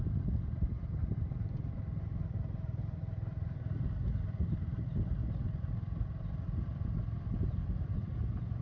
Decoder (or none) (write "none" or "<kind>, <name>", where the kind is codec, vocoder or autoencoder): vocoder, BigVGAN v2